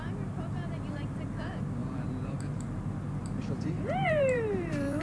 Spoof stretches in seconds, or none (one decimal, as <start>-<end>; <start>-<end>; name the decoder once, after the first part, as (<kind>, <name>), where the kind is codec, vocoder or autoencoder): 1.8-5.0 (vocoder, BigVGAN v2)